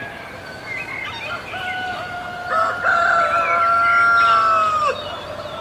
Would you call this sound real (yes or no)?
yes